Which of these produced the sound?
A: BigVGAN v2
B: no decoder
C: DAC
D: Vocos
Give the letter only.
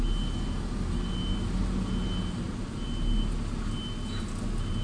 B